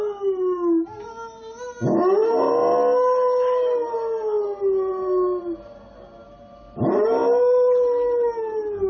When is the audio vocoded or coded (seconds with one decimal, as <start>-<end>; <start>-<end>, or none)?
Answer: none